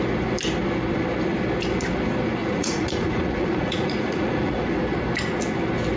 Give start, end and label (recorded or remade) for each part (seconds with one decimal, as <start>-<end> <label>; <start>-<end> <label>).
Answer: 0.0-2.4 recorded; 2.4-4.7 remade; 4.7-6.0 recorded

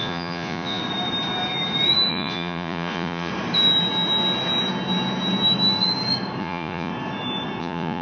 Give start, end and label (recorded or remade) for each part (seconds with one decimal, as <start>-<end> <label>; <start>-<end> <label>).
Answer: 0.0-0.8 remade; 0.8-2.1 recorded; 2.1-3.3 remade; 3.3-6.4 recorded; 6.4-6.9 remade; 6.9-7.6 recorded; 7.6-8.0 remade

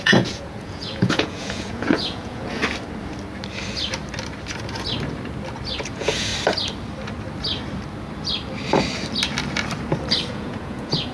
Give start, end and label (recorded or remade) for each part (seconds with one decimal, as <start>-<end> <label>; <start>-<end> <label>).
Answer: 0.0-2.6 remade; 2.6-5.7 recorded; 5.7-6.3 remade; 6.3-10.3 recorded; 10.3-11.1 remade

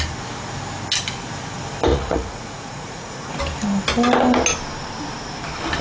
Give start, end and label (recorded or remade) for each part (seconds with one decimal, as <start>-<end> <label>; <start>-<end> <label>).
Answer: 0.0-1.9 recorded; 1.9-3.4 remade; 3.4-5.8 recorded